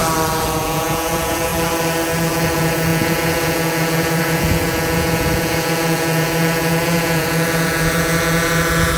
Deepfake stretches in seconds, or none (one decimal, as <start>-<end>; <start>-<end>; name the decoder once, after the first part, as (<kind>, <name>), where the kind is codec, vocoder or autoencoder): 0.6-1.5 (vocoder, Vocos); 2.3-9.0